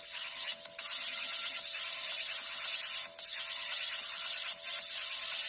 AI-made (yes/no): no